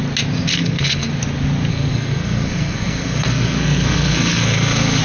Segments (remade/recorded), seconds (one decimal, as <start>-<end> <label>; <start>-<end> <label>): 0.0-0.5 recorded; 0.5-1.1 remade; 1.1-1.7 recorded; 1.7-5.0 remade